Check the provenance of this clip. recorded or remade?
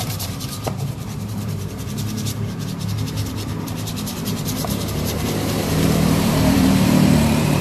remade